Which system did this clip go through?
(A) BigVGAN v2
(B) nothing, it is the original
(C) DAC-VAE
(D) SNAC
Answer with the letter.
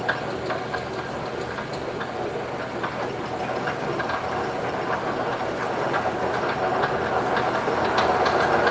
B